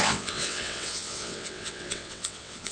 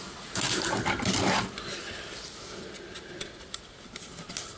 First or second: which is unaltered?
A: second